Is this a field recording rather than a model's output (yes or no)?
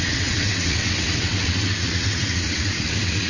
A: no